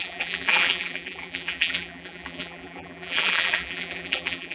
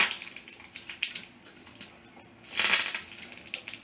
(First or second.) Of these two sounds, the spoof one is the first